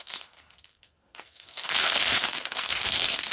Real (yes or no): no